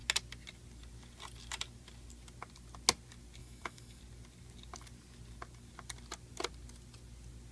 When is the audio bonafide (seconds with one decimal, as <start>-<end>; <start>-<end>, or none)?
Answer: 0.0-3.4; 4.0-7.5